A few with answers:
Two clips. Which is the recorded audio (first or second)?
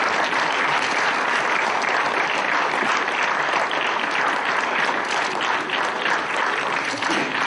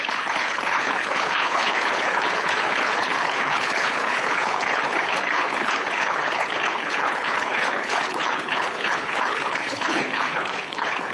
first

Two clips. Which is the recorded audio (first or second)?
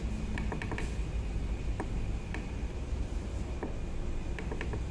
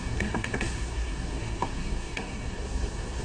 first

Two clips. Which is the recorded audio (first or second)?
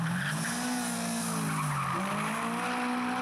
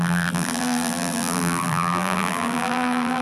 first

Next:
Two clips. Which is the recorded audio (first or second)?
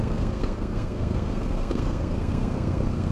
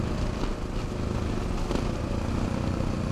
second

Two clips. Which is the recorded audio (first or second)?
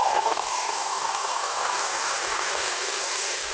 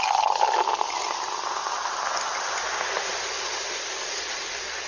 second